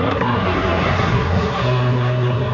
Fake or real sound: fake